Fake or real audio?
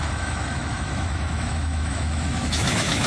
fake